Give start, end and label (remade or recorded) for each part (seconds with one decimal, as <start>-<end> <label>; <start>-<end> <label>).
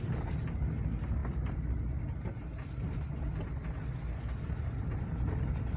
0.0-5.8 recorded